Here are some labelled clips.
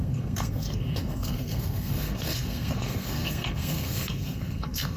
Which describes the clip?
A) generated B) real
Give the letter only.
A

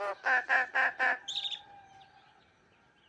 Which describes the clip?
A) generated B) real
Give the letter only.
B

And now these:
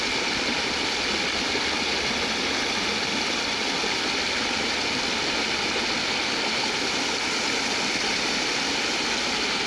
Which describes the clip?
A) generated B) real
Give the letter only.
B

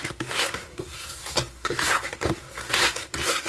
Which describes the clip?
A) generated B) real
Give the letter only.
A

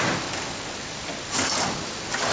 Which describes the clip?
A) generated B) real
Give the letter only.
B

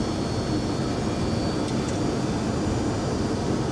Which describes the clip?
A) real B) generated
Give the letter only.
A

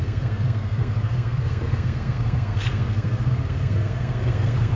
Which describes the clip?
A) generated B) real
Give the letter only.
A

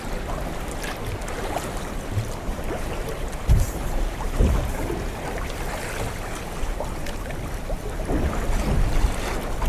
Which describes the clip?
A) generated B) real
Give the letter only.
B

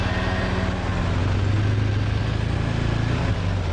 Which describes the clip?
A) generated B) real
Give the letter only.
B